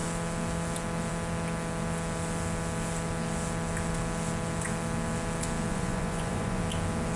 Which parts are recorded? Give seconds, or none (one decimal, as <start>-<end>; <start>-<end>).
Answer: 0.0-5.7; 6.6-7.2